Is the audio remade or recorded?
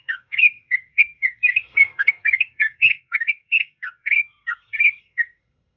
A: remade